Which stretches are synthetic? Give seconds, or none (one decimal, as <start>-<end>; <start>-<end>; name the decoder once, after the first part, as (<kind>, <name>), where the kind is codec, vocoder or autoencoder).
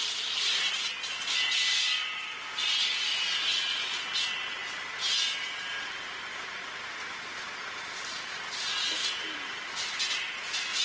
9.0-9.7 (vocoder, BigVGAN v2)